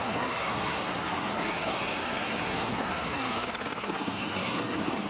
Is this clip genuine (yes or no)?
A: no